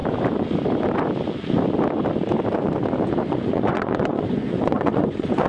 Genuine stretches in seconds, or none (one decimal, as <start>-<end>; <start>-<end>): 0.0-3.3